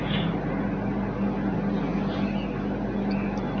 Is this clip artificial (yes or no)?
no